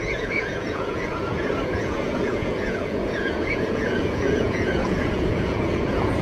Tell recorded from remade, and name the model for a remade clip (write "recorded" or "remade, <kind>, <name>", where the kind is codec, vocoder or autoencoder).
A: remade, vocoder, Vocos